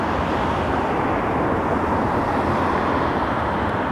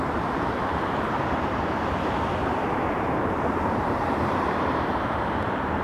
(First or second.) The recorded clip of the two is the first